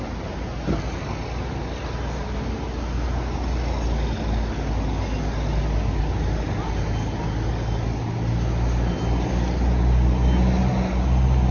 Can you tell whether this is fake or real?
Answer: real